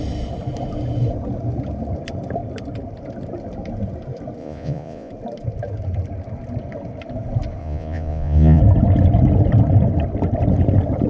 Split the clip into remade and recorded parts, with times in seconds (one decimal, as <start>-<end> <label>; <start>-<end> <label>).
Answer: 0.0-4.4 recorded; 4.4-5.1 remade; 5.1-7.6 recorded; 7.6-8.6 remade; 8.6-11.1 recorded

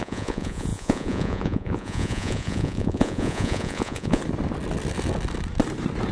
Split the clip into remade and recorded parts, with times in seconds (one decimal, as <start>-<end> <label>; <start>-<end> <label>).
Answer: 0.0-4.2 remade; 4.2-6.1 recorded